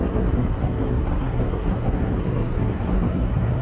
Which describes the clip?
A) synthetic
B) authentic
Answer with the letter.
A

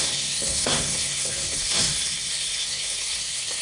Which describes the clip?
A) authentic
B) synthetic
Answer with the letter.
B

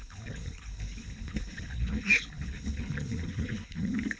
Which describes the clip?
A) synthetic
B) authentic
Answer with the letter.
A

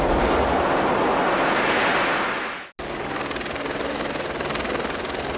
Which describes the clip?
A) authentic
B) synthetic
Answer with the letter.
A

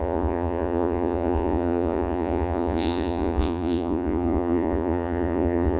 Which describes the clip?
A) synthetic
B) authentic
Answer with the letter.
A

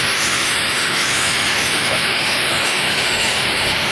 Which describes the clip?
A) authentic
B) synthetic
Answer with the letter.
B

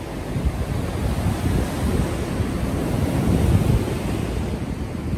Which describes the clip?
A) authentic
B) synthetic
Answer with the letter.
A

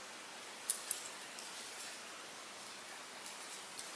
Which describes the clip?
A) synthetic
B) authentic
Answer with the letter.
B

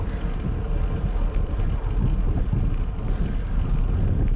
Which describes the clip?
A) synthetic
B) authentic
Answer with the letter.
B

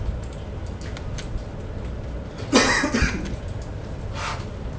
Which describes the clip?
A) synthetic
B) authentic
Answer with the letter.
B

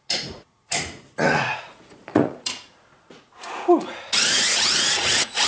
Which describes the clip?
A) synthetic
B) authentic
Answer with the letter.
A